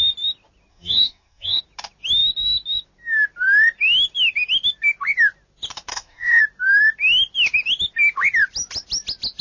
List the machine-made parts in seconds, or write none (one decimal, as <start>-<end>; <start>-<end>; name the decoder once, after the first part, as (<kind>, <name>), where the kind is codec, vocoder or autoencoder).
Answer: 0.7-1.6 (codec, DAC); 5.9-6.4